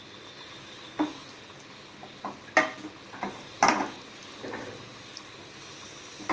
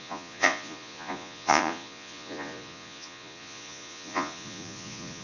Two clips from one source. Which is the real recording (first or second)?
first